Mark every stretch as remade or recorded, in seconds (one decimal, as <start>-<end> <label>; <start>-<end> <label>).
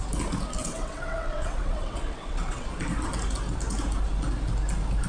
0.0-0.6 recorded; 0.6-2.7 remade; 2.7-5.1 recorded